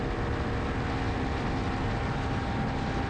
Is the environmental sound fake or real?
real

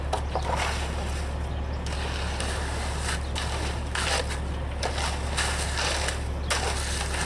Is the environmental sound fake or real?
real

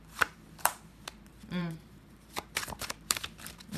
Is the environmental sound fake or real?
fake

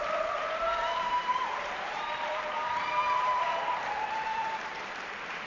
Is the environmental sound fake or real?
fake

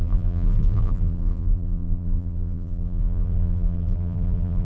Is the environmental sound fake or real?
fake